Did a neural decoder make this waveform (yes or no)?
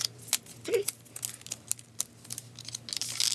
no